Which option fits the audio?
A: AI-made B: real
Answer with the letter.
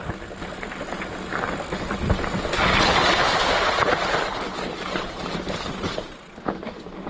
B